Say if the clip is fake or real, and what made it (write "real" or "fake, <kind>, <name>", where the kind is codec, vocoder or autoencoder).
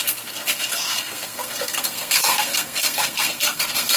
fake, codec, SNAC